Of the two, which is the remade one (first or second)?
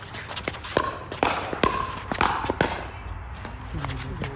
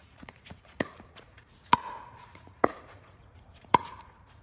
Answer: second